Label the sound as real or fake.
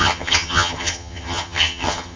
fake